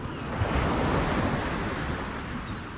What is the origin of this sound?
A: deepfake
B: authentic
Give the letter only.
B